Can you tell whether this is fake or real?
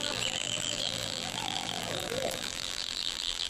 fake